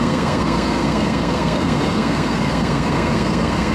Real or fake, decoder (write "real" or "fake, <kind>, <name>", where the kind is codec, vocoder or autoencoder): fake, codec, SNAC